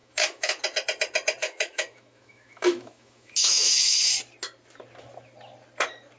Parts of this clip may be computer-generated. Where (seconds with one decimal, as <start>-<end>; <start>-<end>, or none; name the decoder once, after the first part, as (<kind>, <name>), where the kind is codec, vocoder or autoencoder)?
0.0-0.6 (autoencoder, DAC-VAE); 1.4-4.1